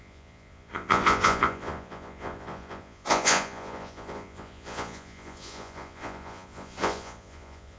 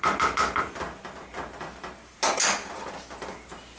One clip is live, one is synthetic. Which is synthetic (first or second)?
first